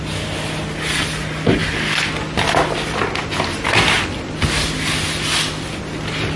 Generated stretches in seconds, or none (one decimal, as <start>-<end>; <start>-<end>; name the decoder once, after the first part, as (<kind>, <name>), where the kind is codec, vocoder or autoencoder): 1.6-2.7 (vocoder, BigVGAN v2)